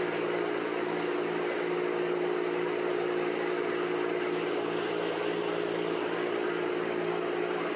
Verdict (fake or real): real